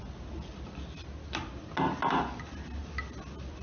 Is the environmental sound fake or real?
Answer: real